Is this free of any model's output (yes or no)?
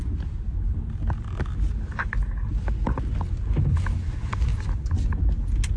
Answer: yes